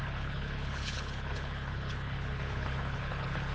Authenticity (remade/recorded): remade